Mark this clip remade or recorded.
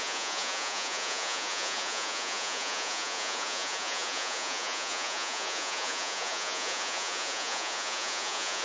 remade